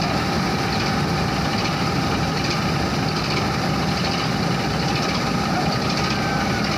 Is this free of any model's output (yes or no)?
yes